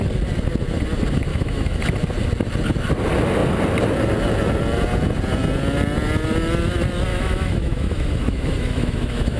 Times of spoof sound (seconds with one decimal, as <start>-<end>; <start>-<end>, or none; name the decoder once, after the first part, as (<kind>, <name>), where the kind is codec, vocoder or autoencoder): 1.3-1.8 (autoencoder, DAC-VAE); 7.1-9.4